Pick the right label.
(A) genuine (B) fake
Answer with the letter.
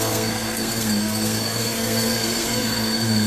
B